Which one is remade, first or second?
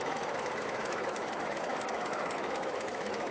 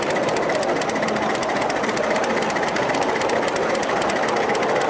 first